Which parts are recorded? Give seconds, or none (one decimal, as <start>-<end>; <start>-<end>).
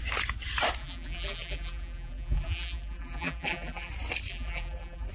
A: 0.0-0.8; 3.9-4.3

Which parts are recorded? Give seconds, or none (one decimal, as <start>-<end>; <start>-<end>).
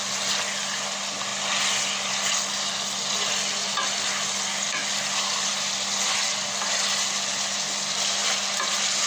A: 0.0-9.1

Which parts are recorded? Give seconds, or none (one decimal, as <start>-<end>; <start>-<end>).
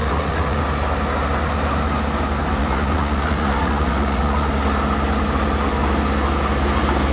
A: 0.6-2.6; 4.5-7.1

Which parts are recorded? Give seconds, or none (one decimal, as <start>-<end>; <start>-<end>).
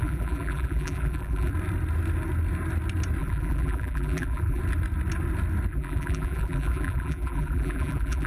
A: 1.5-3.2; 4.6-5.7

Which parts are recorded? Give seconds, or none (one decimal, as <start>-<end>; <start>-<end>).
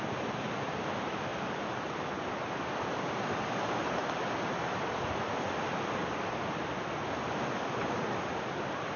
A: 0.0-9.0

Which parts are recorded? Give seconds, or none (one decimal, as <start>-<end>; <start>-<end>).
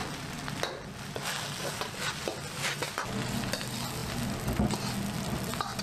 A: 0.0-5.8